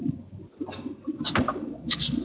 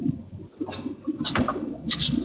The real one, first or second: first